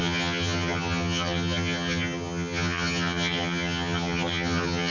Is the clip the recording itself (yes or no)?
no